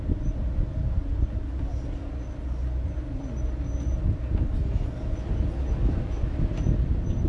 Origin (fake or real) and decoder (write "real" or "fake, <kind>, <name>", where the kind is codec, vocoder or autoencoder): real